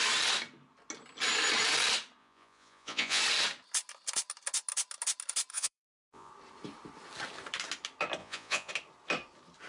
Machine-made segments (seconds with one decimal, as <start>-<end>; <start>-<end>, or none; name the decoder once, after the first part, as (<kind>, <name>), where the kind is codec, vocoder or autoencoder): 2.2-3.2 (vocoder, Vocos); 5.5-6.3; 8.2-8.7